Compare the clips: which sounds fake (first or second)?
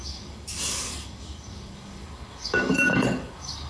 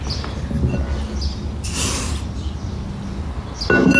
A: first